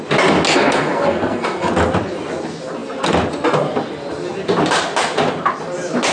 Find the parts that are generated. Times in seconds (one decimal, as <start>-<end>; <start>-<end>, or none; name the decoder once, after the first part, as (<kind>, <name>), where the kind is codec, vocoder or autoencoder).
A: 0.5-1.7 (codec, SNAC)